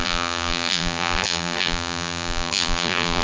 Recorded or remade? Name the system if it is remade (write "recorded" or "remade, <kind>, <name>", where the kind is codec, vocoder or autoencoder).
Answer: remade, vocoder, BigVGAN v2